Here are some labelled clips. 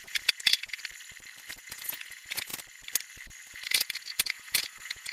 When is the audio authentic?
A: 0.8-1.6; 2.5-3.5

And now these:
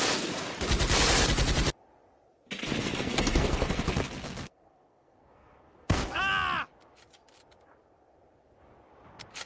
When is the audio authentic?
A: 0.0-2.8; 6.2-9.5

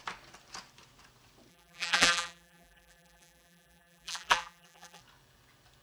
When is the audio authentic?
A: 0.0-1.5; 5.0-5.8

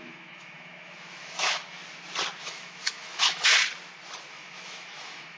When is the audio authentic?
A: 1.8-2.4; 3.5-4.3

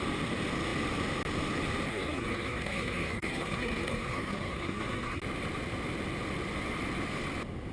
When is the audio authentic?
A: 0.0-1.9; 5.2-7.7

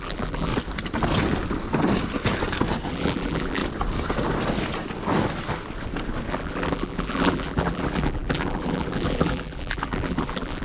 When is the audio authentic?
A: 0.5-2.9; 3.6-6.3

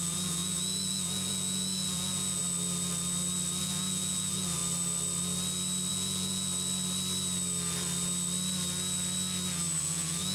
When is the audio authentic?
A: 2.4-3.6; 4.6-5.9; 6.5-9.8

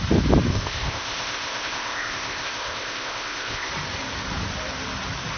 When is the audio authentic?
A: 0.0-0.5; 3.7-5.4